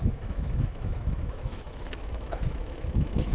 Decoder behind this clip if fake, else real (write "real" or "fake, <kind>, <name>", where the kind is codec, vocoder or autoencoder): fake, autoencoder, DAC-VAE